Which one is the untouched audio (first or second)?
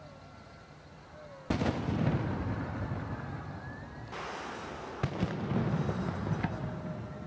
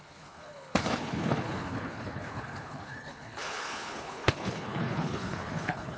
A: first